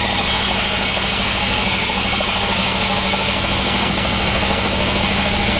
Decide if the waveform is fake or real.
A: fake